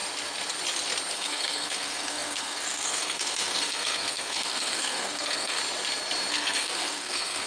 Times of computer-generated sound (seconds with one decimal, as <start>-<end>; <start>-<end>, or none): 1.1-5.6; 6.3-7.5